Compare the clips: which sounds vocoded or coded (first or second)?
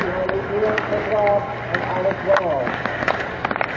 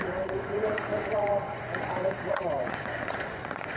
second